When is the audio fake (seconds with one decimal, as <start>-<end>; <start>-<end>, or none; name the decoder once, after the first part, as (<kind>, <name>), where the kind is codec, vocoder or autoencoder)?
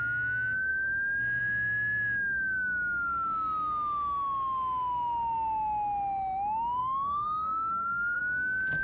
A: 6.8-8.2 (codec, SNAC)